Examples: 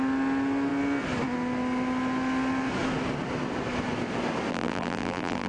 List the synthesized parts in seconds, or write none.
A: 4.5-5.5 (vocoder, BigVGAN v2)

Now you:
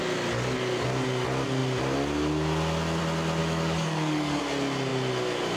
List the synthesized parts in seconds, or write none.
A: 3.4-4.4 (codec, DAC)

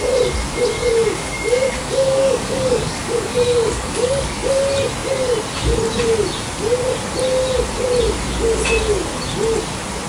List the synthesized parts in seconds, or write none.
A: 0.8-4.5 (codec, DAC)